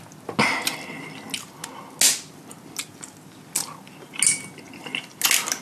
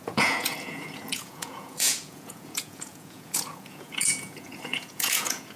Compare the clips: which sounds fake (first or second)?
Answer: second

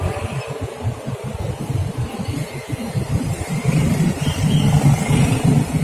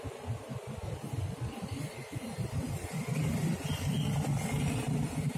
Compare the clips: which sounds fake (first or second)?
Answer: first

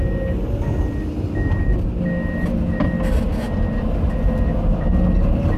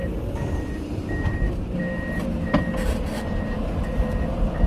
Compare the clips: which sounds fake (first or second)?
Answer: second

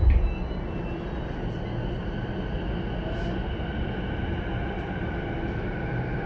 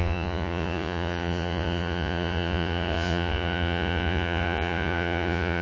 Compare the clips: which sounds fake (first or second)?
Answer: second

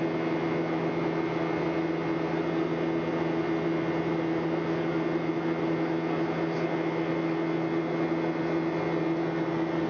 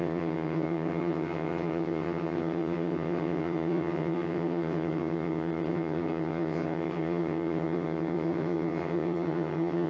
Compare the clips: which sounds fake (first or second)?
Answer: second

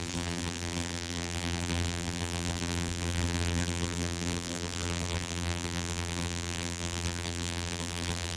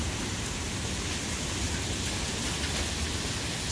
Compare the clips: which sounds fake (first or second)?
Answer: first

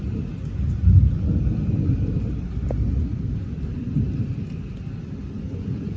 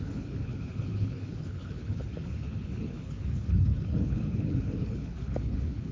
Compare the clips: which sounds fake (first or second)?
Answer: second